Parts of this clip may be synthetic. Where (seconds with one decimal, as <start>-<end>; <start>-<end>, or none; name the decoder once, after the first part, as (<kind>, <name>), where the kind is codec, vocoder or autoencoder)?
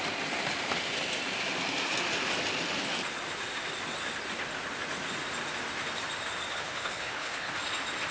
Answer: 6.5-7.5 (codec, HILCodec)